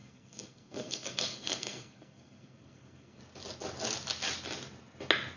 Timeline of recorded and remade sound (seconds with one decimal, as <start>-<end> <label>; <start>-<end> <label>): 0.0-3.2 remade; 3.2-5.4 recorded